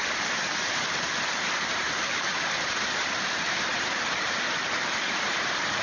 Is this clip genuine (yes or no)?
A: no